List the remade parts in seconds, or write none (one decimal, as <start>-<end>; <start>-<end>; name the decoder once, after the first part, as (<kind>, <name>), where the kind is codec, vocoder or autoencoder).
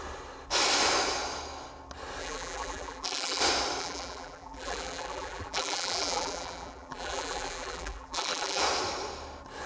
2.2-3.4 (vocoder, BigVGAN v2); 3.8-8.6